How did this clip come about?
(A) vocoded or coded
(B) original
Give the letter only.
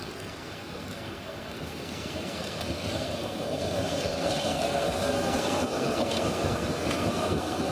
A